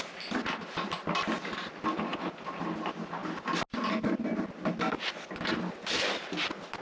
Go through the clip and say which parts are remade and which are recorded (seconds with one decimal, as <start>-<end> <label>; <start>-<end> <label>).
0.0-6.8 recorded